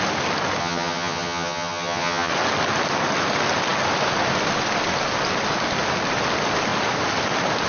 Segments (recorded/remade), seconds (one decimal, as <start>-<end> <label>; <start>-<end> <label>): 0.0-0.6 recorded; 0.6-2.3 remade; 2.3-7.7 recorded